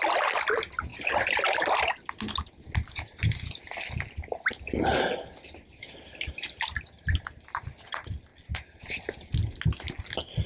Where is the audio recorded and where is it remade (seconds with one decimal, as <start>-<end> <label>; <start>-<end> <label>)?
0.0-10.5 recorded